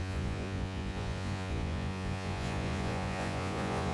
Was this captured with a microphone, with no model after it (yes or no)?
no